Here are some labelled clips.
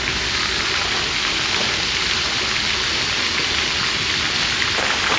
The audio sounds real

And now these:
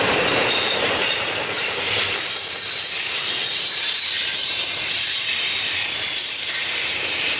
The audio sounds fake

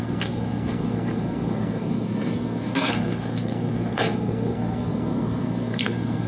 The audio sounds fake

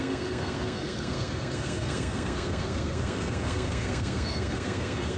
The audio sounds fake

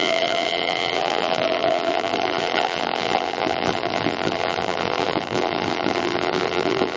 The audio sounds fake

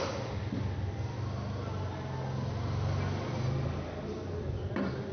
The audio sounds real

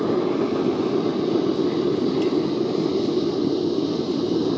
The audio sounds real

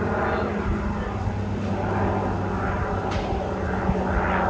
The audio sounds real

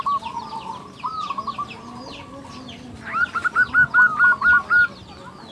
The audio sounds real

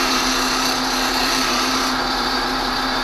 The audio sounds fake